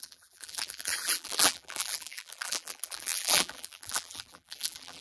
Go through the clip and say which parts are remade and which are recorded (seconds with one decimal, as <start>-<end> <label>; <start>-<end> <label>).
0.0-5.0 remade